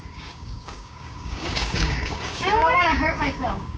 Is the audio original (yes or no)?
no